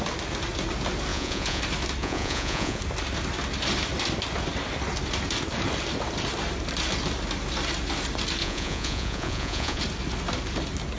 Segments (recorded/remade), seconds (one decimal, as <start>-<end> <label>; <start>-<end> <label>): 0.0-1.1 recorded; 1.1-1.6 remade; 1.6-2.0 recorded; 2.0-2.8 remade; 2.8-8.4 recorded; 8.4-9.8 remade; 9.8-11.0 recorded